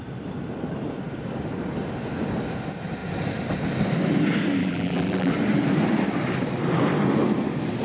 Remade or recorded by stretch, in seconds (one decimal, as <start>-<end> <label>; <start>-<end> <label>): 0.0-4.6 recorded; 4.6-5.3 remade; 5.3-7.8 recorded